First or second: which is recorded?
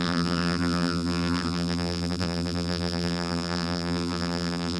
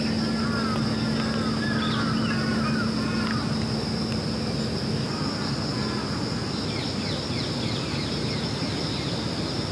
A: second